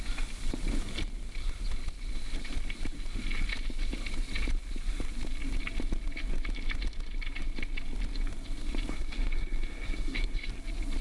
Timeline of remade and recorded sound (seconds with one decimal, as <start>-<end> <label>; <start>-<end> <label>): 0.0-8.9 recorded; 8.9-10.5 remade; 10.5-11.0 recorded